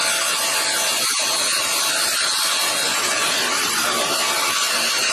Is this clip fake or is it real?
real